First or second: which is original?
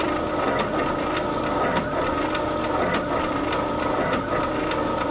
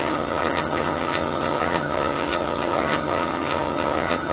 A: first